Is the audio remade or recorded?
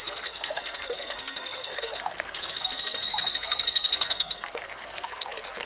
remade